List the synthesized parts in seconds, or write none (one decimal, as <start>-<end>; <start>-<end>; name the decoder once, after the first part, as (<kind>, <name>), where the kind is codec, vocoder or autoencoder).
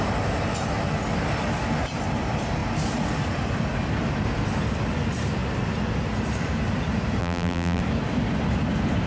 7.2-7.8 (vocoder, BigVGAN v2)